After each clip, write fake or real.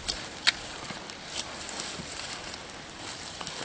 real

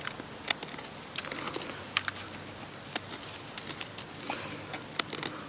real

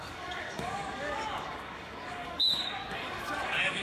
fake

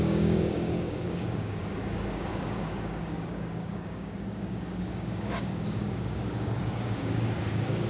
fake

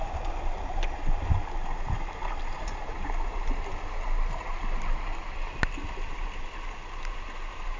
real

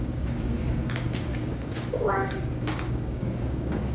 fake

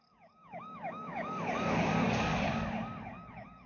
fake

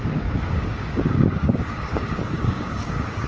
fake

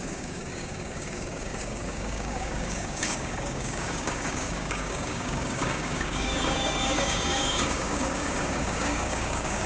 fake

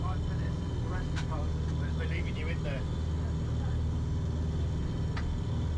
real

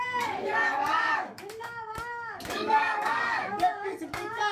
fake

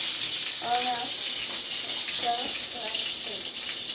real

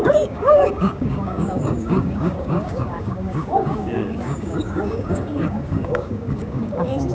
fake